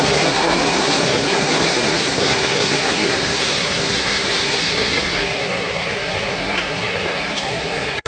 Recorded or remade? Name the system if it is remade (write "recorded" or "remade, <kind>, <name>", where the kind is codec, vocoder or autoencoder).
remade, codec, SNAC